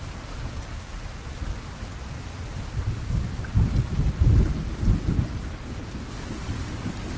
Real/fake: real